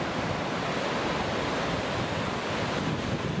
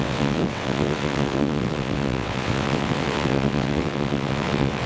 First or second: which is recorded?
first